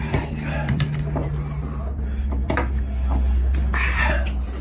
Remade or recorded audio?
recorded